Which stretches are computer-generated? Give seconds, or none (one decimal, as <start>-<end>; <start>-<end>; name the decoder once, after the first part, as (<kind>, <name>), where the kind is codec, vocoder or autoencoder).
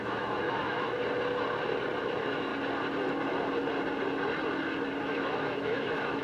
0.0-1.0 (autoencoder, DAC-VAE); 2.0-2.5; 5.0-6.2